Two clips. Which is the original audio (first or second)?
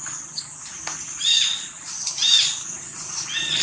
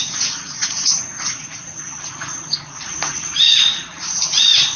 first